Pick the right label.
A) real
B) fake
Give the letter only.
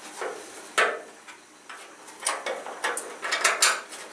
A